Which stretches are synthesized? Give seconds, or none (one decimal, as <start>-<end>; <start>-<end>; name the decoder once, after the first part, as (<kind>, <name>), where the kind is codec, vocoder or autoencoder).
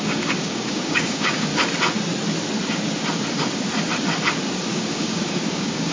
0.0-1.5 (codec, DAC); 4.7-5.9